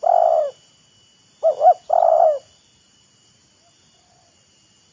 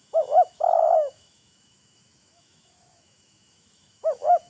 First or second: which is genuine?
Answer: first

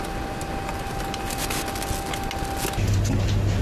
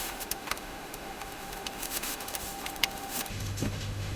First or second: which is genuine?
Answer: first